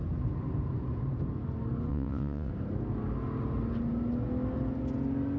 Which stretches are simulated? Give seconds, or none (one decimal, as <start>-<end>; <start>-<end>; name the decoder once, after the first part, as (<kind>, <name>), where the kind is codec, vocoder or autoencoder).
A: 1.9-2.5 (vocoder, WaveNeXt)